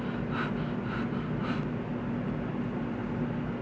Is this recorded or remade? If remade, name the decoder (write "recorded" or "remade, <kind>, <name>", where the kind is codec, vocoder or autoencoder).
recorded